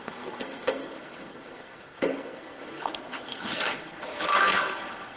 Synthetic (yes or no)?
yes